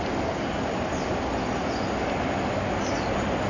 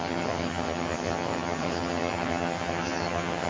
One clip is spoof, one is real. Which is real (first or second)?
first